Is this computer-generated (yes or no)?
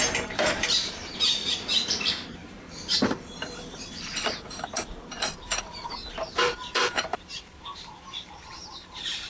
yes